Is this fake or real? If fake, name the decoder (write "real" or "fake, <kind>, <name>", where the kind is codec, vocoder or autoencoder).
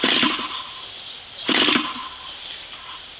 real